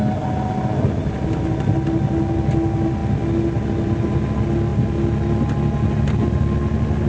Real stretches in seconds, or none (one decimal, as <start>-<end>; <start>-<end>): 0.0-7.1